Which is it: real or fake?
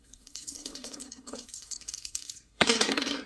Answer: fake